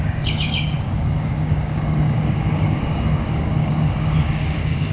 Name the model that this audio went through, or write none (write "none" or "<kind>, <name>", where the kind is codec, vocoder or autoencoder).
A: codec, DAC